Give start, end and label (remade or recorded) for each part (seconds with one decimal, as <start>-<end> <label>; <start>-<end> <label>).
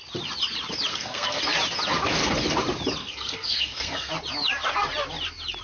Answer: 0.0-0.9 recorded; 0.9-1.4 remade; 1.4-3.0 recorded; 3.0-4.1 remade; 4.1-5.6 recorded